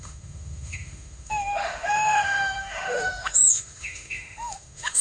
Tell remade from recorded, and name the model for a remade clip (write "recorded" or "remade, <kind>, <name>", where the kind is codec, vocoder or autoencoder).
remade, autoencoder, DAC-VAE